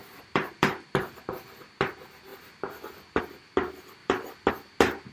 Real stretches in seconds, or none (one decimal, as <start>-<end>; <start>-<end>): 1.3-4.0; 4.5-5.1